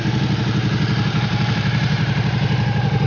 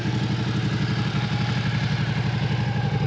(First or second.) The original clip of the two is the second